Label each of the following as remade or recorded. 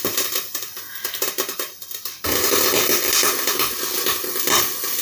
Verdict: remade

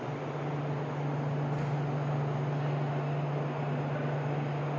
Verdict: recorded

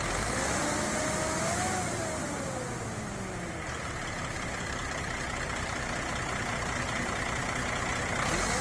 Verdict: recorded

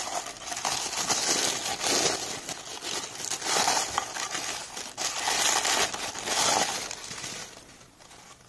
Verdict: recorded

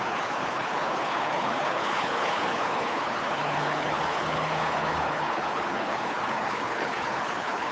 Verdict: remade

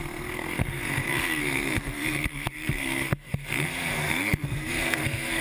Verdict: remade